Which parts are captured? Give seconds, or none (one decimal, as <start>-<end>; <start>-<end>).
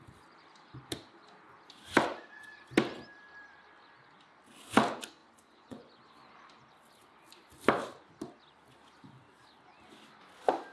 0.0-5.2; 5.9-10.7